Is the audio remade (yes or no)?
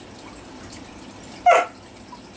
no